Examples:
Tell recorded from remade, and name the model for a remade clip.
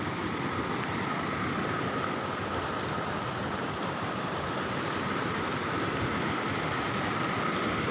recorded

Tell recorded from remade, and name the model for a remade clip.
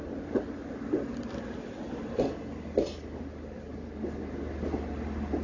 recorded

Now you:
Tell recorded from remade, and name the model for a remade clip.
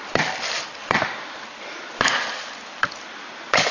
recorded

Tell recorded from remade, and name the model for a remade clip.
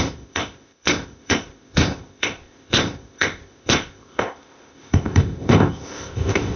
remade, codec, ZipCodec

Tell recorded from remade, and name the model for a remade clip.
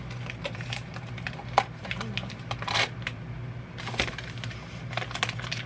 recorded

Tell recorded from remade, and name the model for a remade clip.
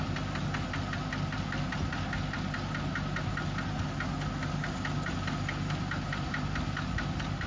recorded